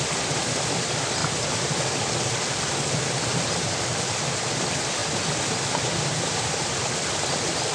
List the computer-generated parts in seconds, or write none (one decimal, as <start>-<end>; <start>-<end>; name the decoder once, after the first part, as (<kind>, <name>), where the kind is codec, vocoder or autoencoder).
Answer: 0.0-7.7 (vocoder, BigVGAN v2)